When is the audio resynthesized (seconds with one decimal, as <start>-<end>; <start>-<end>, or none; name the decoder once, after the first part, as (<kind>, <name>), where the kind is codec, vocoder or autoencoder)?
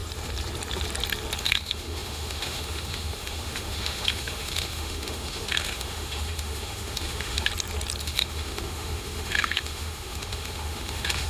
1.4-7.5 (autoencoder, DAC-VAE); 8.0-11.3